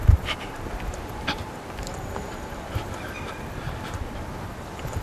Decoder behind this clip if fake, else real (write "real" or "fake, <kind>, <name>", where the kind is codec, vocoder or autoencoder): fake, vocoder, BigVGAN v2